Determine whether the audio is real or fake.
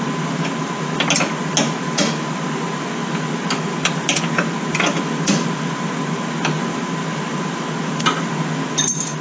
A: real